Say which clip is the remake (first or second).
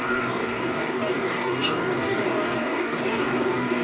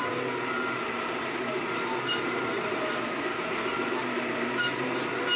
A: first